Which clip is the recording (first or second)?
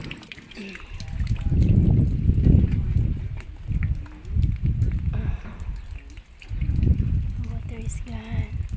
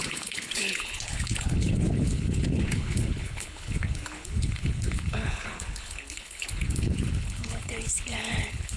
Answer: first